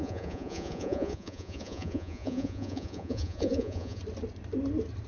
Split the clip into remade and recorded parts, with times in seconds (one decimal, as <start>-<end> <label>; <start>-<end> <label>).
0.0-4.0 remade; 4.0-5.1 recorded